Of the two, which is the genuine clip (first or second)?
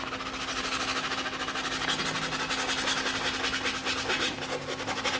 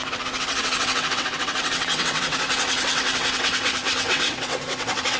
first